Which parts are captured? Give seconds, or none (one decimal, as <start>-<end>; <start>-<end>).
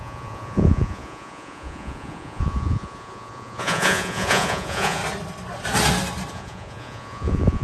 5.0-6.3